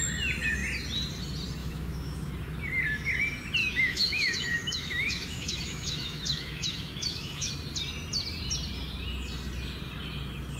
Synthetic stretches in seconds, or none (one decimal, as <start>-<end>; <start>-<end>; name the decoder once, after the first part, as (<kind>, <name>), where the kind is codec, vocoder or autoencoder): 1.6-2.3 (autoencoder, DAC-VAE); 3.6-7.5